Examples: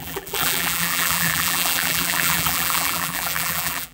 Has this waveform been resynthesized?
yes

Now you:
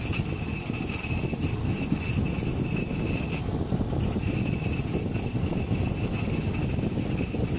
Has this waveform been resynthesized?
no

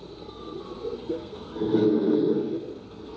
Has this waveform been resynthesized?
yes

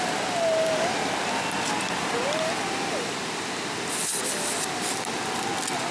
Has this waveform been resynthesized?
no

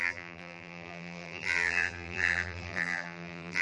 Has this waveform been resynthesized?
yes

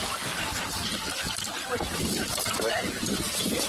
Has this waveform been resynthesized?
no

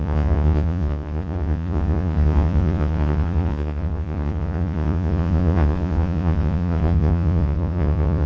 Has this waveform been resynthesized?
yes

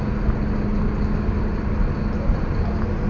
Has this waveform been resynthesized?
no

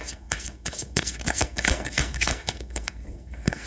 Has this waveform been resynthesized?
yes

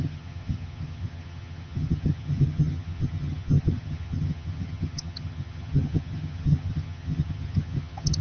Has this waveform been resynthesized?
yes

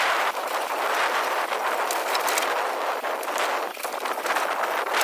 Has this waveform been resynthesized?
no